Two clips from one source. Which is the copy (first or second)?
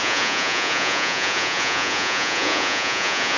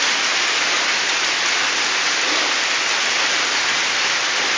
first